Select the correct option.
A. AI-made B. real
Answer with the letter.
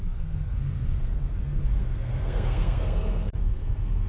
A